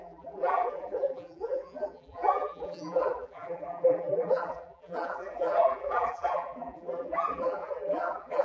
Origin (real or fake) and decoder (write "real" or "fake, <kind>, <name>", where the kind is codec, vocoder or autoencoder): fake, vocoder, BigVGAN v2